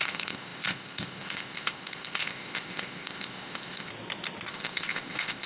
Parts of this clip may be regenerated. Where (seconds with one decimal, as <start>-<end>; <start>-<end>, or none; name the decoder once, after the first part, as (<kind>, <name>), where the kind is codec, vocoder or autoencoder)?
0.0-3.9 (codec, ZipCodec); 4.5-5.5